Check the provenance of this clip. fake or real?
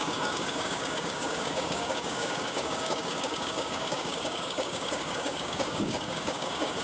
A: fake